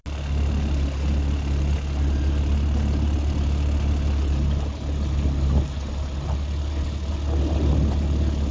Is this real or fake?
real